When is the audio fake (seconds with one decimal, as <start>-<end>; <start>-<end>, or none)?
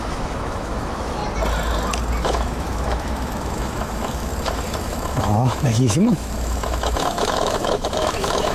0.0-1.2; 2.2-4.3; 4.8-8.5